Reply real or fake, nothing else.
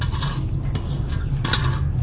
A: real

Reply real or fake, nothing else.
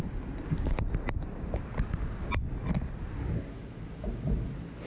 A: real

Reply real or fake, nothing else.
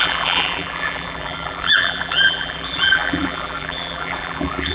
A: fake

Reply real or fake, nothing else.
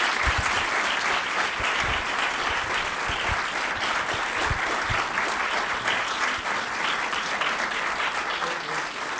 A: real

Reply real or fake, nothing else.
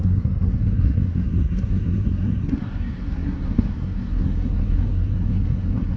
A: fake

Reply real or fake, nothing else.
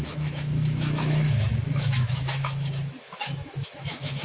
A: fake